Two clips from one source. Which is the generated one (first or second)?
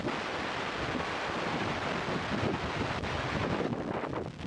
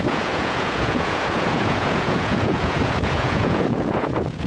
second